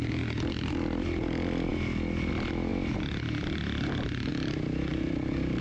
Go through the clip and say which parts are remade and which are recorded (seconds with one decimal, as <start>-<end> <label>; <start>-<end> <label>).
0.0-4.9 recorded; 4.9-5.6 remade